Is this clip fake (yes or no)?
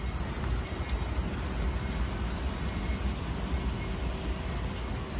no